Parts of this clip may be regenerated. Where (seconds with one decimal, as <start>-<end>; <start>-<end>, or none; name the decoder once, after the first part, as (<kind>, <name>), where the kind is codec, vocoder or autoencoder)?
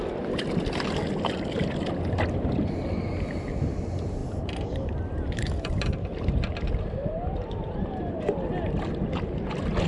4.2-8.2 (vocoder, BigVGAN v2)